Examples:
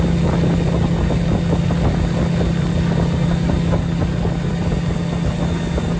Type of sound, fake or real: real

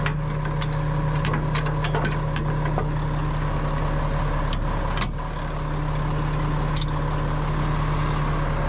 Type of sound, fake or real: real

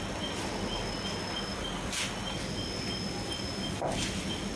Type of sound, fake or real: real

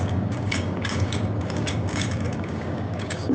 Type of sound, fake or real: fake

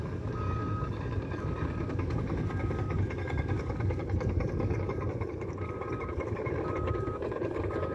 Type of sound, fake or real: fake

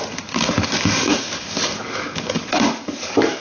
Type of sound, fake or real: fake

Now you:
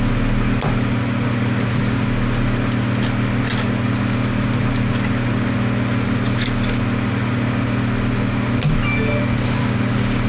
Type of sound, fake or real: real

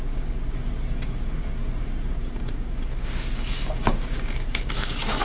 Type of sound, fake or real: fake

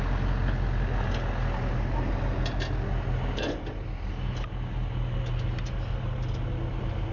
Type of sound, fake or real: real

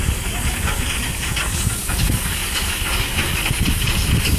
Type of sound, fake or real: fake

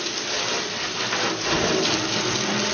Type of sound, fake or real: real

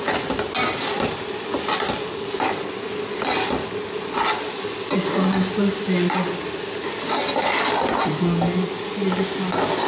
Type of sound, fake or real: real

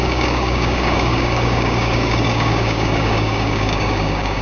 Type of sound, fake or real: fake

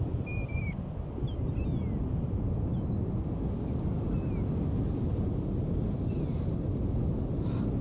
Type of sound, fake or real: real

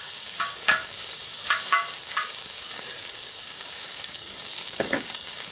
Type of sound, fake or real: fake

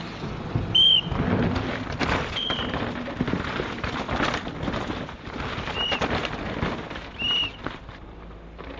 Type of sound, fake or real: real